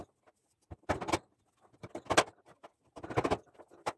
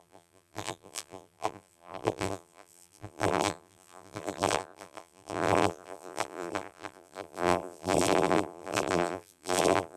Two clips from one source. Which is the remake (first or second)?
second